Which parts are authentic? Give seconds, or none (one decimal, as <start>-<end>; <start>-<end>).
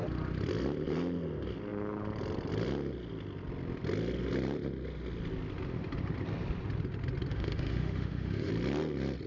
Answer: 0.0-7.3; 8.5-9.3